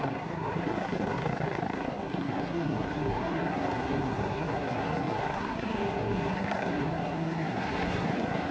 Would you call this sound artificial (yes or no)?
yes